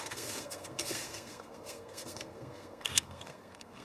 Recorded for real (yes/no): no